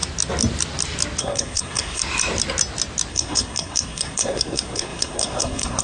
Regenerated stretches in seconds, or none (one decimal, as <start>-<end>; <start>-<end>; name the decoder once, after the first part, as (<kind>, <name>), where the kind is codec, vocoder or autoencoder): 1.2-2.0 (codec, SNAC); 3.1-5.8

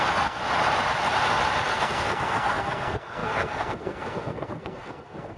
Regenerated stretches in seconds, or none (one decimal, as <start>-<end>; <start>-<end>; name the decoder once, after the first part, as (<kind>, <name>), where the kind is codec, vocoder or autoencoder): 0.0-0.4 (codec, SNAC); 1.7-5.4

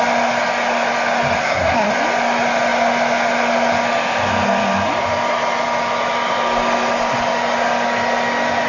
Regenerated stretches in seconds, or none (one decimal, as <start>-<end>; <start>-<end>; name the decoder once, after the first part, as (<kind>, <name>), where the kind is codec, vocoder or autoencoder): 1.4-1.9 (codec, SNAC)

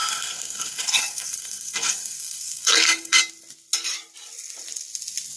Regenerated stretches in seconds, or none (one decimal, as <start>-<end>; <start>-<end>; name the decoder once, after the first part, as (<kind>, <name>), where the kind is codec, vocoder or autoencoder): 0.0-3.2 (codec, SNAC)

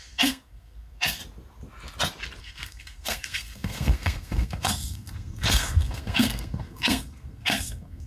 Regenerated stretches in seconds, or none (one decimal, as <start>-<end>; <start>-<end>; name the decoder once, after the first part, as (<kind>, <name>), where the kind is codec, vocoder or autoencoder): 0.0-1.2 (codec, SNAC); 2.4-8.1

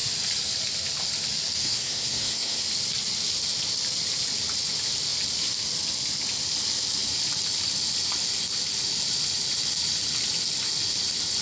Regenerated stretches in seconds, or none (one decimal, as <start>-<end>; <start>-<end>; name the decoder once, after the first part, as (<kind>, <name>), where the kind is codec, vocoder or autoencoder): 1.6-2.6 (codec, SNAC)